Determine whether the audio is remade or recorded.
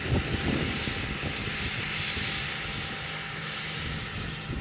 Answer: recorded